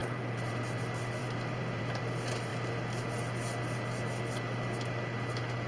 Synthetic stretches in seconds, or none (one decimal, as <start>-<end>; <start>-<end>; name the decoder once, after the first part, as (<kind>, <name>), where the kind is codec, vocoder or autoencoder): 0.0-0.6 (vocoder, BigVGAN v2); 1.2-2.0